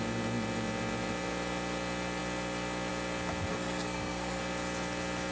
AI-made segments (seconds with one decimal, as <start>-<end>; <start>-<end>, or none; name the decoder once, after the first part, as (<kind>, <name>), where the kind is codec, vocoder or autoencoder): 3.5-4.4 (codec, SNAC)